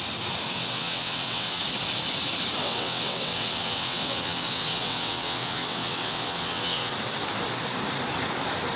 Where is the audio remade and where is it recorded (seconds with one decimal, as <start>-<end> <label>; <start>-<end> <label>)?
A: 0.0-0.5 recorded; 0.5-1.6 remade; 1.6-2.6 recorded; 2.6-6.9 remade; 6.9-8.8 recorded

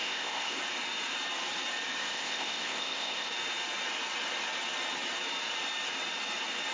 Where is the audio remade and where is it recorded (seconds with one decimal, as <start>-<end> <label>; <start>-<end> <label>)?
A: 0.0-0.6 remade; 0.6-2.0 recorded; 2.0-3.3 remade; 3.3-6.7 recorded